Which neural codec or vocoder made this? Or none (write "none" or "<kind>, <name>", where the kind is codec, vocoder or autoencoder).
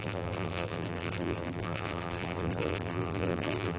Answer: vocoder, BigVGAN v2